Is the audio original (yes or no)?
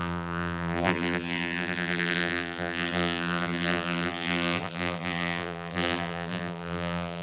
no